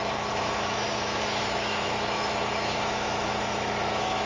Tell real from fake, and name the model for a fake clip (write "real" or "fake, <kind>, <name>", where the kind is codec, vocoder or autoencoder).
fake, autoencoder, DAC-VAE